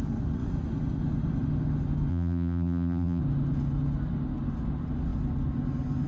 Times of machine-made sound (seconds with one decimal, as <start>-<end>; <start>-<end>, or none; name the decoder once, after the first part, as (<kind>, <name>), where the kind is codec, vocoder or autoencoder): 2.1-3.2 (vocoder, BigVGAN v2)